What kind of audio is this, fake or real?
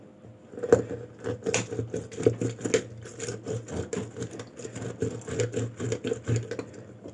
real